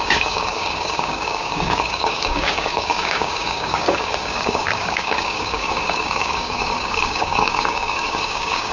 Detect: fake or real fake